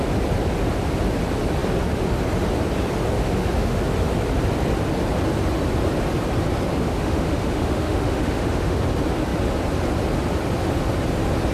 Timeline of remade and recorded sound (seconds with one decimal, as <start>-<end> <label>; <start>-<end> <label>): 0.0-3.2 recorded; 3.2-3.8 remade; 3.8-6.8 recorded; 6.8-8.8 remade; 8.8-11.5 recorded

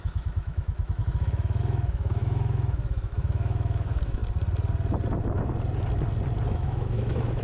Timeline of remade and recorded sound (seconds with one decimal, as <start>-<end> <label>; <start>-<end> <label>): 0.0-4.2 remade; 4.2-6.5 recorded; 6.5-7.4 remade